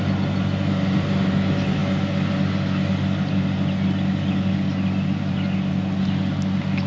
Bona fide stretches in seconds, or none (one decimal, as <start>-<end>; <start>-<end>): 0.0-6.9